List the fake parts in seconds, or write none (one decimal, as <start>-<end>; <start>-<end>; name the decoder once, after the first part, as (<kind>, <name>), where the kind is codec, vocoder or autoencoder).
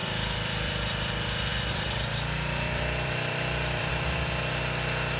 0.0-0.7 (vocoder, BigVGAN v2); 1.5-3.9